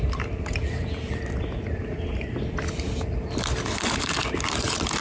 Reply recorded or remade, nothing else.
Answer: remade